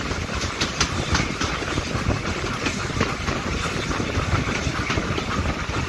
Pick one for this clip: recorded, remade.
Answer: recorded